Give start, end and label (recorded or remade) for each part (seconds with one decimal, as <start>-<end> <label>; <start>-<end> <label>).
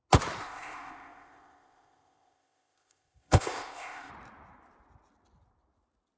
0.0-0.4 recorded; 0.4-4.1 remade; 4.1-6.2 recorded